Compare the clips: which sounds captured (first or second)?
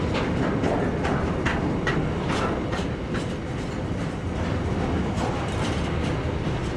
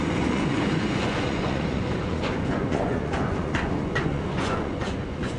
first